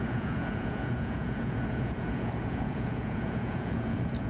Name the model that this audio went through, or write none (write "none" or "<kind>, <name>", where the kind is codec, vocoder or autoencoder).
vocoder, Vocos